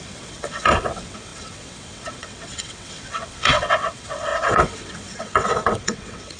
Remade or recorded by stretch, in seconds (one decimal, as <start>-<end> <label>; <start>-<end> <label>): 0.0-6.4 remade